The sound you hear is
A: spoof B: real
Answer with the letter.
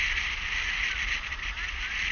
B